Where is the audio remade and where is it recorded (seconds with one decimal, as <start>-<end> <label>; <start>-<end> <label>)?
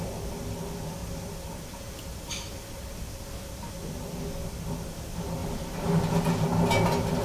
0.0-7.2 recorded